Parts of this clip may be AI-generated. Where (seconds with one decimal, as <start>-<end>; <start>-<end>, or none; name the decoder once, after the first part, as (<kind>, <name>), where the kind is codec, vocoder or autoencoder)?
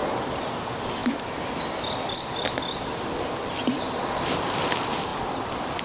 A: 0.0-0.6 (vocoder, BigVGAN v2); 1.0-4.5